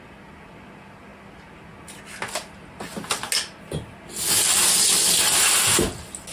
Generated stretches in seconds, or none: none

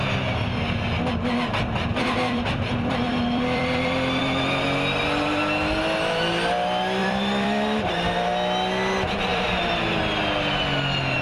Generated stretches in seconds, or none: 1.9-4.2 (vocoder, BigVGAN v2); 7.0-7.9; 9.3-10.0

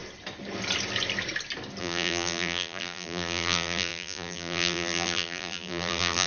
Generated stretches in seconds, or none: 1.8-6.3 (vocoder, BigVGAN v2)

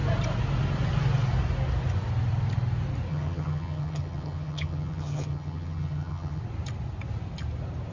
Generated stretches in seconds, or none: 3.1-6.4 (vocoder, HiFi-GAN)

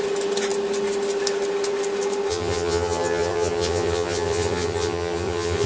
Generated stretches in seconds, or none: 2.3-5.7 (vocoder, HiFi-GAN)

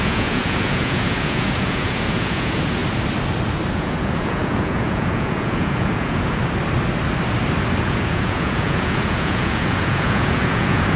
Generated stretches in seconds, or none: 0.0-2.8 (vocoder, Vocos); 3.7-6.4; 7.8-11.0

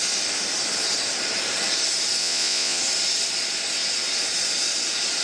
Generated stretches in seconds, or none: 2.2-2.8 (vocoder, Vocos)

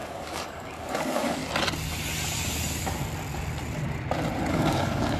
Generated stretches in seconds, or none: 0.0-1.4 (codec, DAC); 4.5-5.2